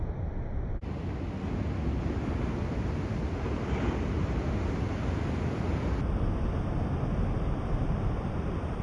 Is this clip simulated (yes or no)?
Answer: no